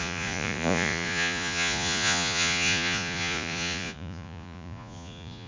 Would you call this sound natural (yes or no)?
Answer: no